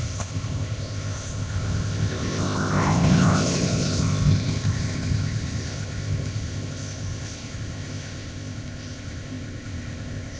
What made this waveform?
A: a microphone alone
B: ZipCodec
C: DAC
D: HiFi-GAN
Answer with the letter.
B